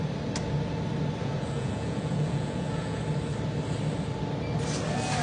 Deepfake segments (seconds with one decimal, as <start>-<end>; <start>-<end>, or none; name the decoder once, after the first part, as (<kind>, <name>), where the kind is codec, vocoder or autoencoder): 1.2-3.0 (vocoder, Vocos)